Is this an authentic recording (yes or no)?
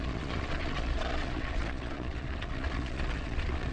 no